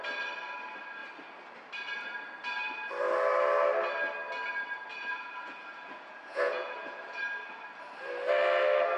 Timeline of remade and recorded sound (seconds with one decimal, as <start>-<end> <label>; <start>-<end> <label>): 0.0-4.9 recorded; 4.9-7.2 remade; 7.2-9.0 recorded